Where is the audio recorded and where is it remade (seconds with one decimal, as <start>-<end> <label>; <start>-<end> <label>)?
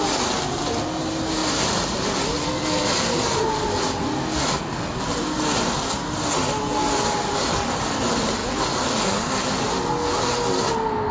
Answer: 0.0-1.4 recorded; 1.4-3.7 remade; 3.7-11.1 recorded